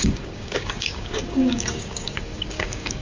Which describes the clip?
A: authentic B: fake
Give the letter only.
B